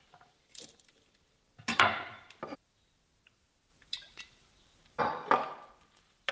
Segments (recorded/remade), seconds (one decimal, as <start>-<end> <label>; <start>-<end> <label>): 0.0-3.7 recorded; 3.7-5.0 remade; 5.0-6.3 recorded